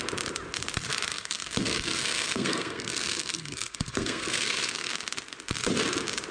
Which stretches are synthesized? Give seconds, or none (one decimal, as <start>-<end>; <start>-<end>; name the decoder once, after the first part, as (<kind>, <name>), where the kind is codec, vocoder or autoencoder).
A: 1.1-4.9 (codec, SNAC)